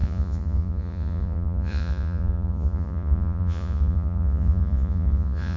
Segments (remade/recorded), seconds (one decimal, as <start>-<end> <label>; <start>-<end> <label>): 0.0-5.6 remade